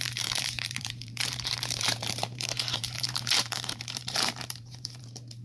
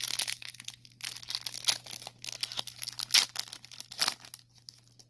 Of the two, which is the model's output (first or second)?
first